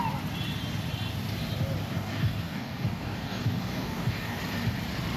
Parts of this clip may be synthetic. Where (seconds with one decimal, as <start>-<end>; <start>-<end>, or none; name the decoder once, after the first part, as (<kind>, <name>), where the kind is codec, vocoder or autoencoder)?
1.9-4.4 (codec, DAC)